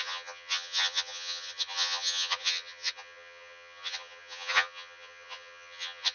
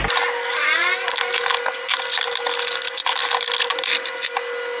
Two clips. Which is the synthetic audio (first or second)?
first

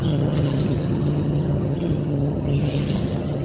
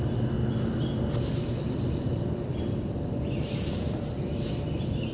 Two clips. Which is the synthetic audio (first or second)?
first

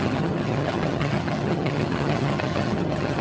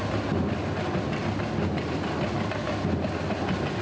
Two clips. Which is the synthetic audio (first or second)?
first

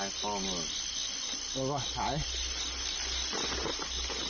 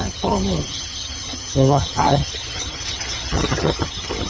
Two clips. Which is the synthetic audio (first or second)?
second